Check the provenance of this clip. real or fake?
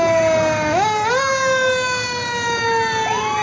real